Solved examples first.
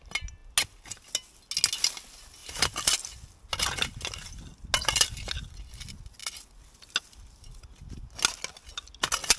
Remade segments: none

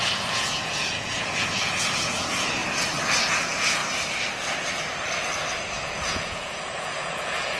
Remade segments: 0.0-2.6 (vocoder, Vocos); 3.2-3.8; 5.7-7.6

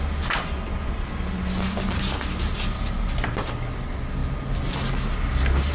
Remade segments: none

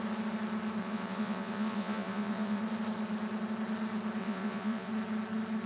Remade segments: 0.8-2.6 (vocoder, Vocos); 4.2-4.9

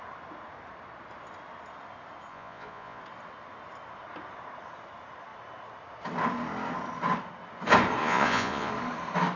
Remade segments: 2.3-3.0 (vocoder, Vocos); 8.0-8.7

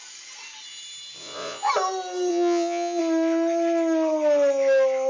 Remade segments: 1.2-1.7 (vocoder, Vocos); 2.3-3.0